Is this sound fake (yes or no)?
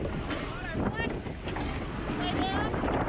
no